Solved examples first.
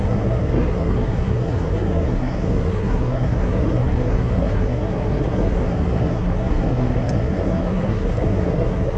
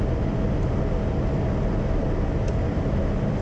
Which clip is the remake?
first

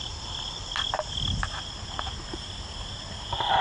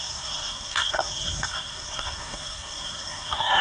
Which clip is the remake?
second